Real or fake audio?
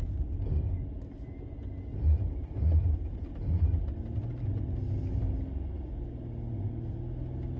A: real